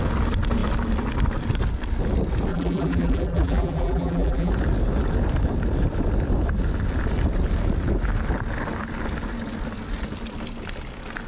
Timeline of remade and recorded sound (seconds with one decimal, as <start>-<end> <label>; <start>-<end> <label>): 0.0-2.5 recorded; 2.5-4.5 remade; 4.5-11.3 recorded